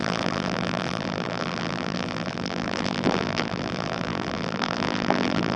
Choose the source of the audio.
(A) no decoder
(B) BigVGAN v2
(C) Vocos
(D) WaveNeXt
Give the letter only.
B